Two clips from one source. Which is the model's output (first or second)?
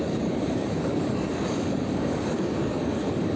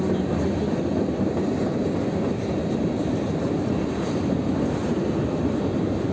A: first